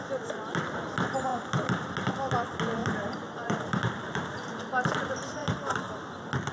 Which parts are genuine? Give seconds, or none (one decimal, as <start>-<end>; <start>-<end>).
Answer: 0.0-2.8; 4.7-5.4; 5.9-6.5